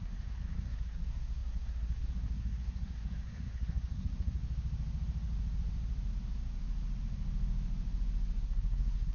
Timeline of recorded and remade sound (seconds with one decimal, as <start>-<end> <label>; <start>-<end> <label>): 0.0-4.4 remade; 4.4-8.4 recorded; 8.4-9.1 remade